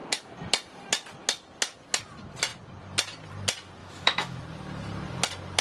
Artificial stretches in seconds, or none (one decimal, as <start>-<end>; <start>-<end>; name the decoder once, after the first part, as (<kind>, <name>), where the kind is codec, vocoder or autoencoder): 3.8-4.4 (autoencoder, DAC-VAE)